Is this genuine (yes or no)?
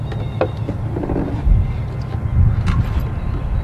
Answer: yes